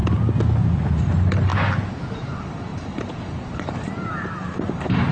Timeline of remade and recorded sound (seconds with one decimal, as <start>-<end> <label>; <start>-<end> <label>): 0.0-1.0 recorded; 1.0-1.5 remade; 1.5-2.1 recorded; 2.1-5.1 remade